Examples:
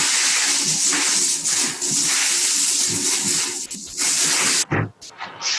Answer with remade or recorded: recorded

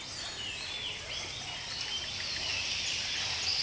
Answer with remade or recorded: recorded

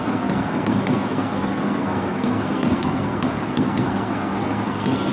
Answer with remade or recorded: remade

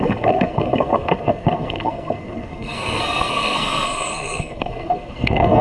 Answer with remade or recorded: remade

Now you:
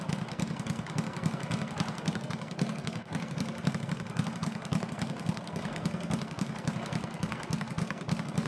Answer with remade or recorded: remade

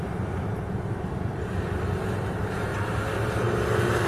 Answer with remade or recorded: recorded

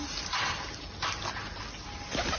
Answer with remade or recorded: recorded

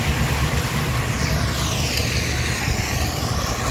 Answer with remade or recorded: recorded